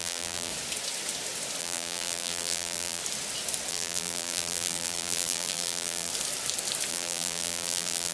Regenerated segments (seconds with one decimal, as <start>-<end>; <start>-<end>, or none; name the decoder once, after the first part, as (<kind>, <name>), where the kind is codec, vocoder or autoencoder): 0.0-0.5 (vocoder, BigVGAN v2); 1.6-3.0; 3.7-6.1; 6.9-8.1